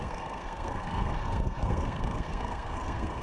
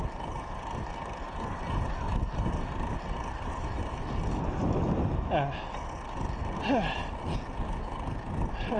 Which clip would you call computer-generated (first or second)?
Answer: first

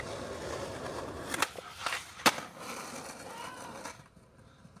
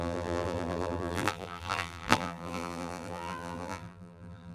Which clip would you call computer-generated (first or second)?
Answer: second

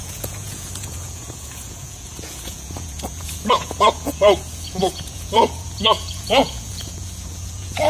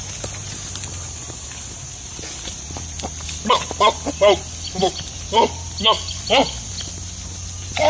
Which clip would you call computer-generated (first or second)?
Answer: first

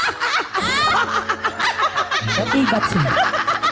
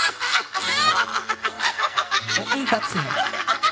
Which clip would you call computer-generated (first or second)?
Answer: second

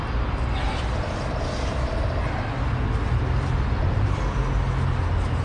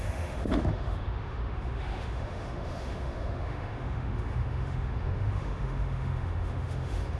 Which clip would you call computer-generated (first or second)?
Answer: second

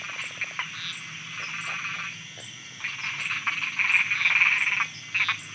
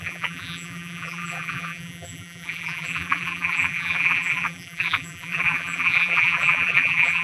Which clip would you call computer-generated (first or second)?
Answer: second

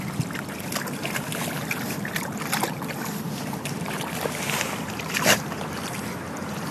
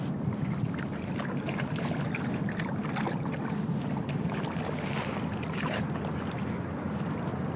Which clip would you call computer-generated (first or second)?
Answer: first